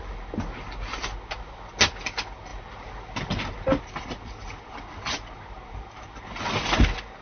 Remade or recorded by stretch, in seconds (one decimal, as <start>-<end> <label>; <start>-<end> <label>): 0.0-7.2 recorded